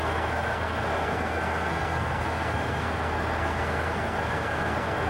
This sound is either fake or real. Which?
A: fake